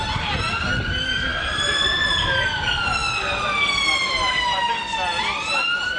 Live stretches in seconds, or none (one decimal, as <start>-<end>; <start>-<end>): 0.0-6.0